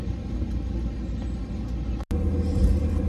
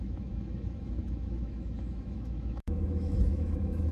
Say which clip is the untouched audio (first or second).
first